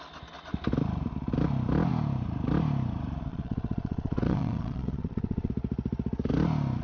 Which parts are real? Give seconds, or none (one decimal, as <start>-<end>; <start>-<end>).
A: 0.0-3.3; 5.5-6.8